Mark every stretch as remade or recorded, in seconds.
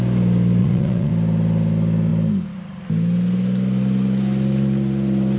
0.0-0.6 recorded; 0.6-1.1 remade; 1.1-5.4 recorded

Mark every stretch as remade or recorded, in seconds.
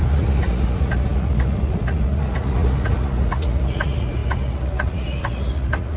0.0-6.0 remade